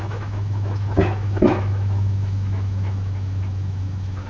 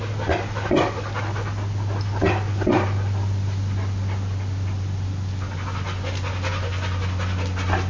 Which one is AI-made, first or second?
first